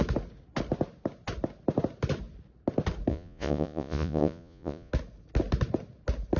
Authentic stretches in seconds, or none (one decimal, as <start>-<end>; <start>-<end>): 0.0-3.1; 4.9-6.4